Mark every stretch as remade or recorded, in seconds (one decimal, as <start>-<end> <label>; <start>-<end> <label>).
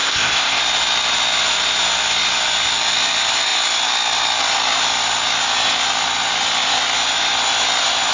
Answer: 0.0-0.6 remade; 0.6-8.1 recorded